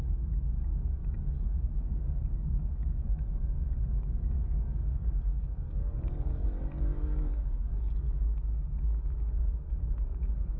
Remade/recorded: remade